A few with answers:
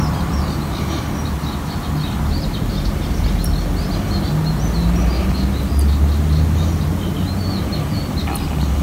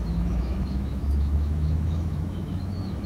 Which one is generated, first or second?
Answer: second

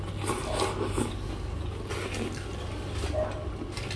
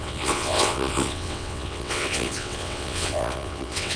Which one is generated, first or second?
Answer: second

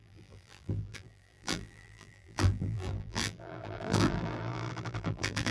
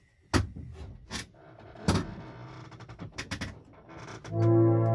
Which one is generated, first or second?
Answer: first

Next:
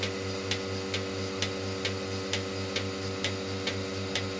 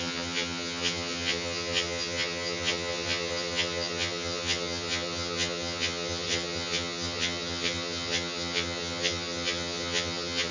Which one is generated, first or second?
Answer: second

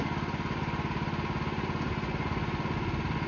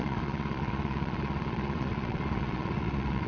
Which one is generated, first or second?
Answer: second